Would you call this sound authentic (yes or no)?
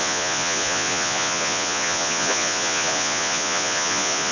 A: no